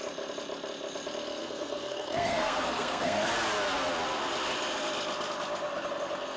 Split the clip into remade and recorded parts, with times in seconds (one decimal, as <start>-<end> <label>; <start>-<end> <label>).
0.0-1.4 recorded; 1.4-3.3 remade; 3.3-6.4 recorded